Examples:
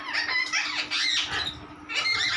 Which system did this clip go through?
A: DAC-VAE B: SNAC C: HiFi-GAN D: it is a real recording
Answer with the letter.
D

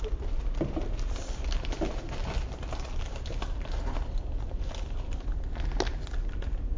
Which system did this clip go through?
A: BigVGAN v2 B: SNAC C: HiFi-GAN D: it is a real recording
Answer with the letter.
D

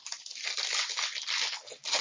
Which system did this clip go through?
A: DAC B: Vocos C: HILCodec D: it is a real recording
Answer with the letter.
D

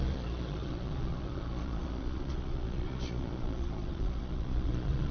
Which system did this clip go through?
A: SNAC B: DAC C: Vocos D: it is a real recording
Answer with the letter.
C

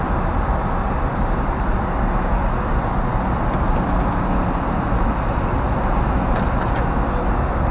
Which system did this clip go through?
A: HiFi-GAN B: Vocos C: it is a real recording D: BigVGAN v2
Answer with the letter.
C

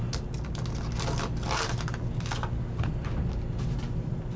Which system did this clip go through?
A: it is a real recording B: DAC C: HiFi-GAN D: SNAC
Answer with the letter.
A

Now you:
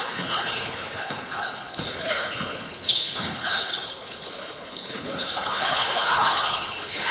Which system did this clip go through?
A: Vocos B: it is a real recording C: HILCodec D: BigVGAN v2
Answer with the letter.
C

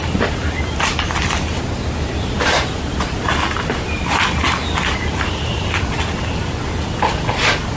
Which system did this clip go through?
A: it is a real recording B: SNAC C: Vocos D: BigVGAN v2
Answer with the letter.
A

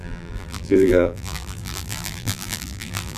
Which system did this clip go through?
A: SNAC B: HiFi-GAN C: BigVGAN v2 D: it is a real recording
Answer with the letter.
C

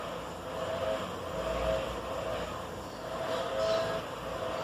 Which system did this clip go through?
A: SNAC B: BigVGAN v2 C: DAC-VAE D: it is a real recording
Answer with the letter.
D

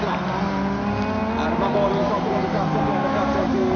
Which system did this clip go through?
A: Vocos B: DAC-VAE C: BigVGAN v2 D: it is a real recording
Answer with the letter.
D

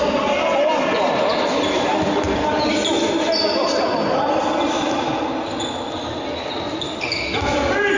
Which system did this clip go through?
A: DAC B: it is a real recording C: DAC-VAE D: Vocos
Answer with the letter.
B